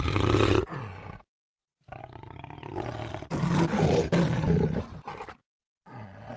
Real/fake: real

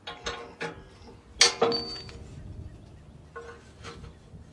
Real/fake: real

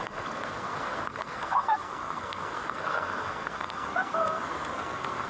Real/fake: fake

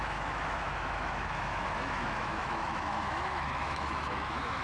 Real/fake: fake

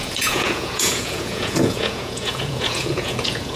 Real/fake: fake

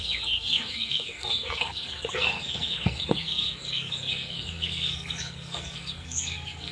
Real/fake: fake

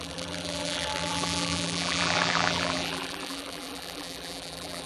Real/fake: fake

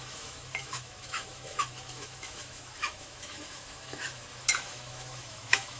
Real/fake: fake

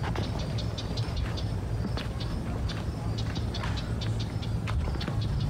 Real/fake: real